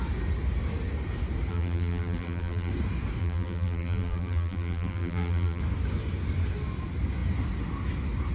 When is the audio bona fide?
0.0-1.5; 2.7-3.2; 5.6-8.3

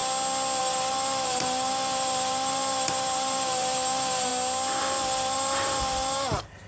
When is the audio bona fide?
0.0-0.6; 4.3-4.8

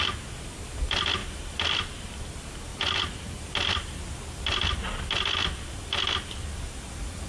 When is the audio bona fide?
0.0-1.2; 2.2-2.7

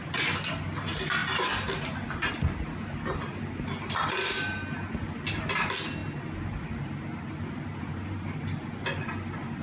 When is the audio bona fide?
0.0-9.6